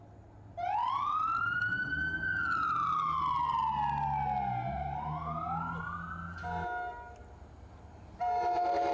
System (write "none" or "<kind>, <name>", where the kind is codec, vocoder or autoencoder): none